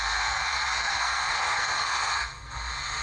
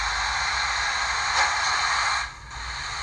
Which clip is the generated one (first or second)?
first